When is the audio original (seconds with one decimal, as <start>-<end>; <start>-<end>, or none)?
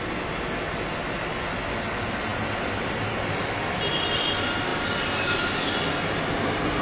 0.0-6.8